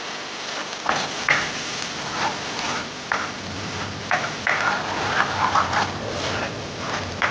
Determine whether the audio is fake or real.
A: real